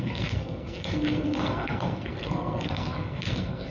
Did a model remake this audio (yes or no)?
yes